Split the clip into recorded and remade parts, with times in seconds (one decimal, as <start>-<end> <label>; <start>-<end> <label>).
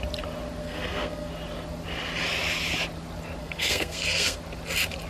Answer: 0.0-0.6 recorded; 0.6-1.3 remade; 1.3-3.4 recorded; 3.4-4.4 remade; 4.4-5.1 recorded